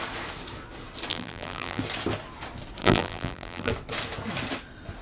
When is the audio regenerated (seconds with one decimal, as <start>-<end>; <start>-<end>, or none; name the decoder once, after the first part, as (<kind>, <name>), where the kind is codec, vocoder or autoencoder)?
1.1-1.8 (vocoder, BigVGAN v2); 2.8-3.7